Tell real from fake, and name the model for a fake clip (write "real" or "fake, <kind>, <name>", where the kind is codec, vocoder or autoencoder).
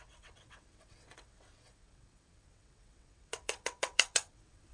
fake, vocoder, WaveNeXt